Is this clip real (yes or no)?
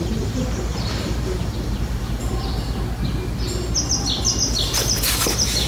yes